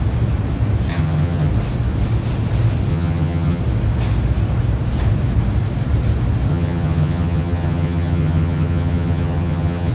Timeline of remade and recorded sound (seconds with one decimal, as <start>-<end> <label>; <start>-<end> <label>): 0.0-0.9 recorded; 0.9-1.5 remade; 1.5-2.9 recorded; 2.9-3.6 remade; 3.6-6.5 recorded; 6.5-9.9 remade